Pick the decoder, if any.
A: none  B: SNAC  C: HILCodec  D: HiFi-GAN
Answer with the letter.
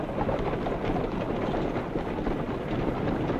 A